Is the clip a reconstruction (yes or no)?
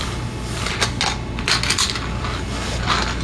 no